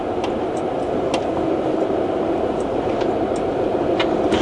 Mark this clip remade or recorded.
recorded